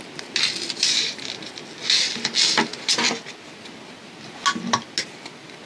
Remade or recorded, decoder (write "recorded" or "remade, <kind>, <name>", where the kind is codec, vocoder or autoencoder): recorded